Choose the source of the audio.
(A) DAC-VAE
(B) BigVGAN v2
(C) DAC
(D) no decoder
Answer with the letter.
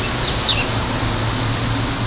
D